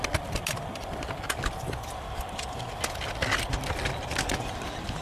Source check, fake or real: real